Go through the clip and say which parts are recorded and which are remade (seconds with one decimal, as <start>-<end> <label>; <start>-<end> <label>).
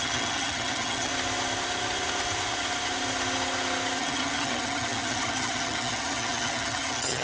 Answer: 0.0-1.1 remade; 1.1-4.0 recorded; 4.0-7.2 remade